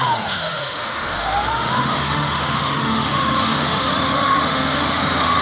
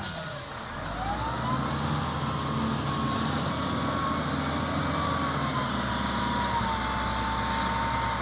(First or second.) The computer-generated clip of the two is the first